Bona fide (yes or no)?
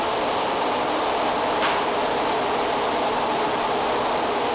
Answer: yes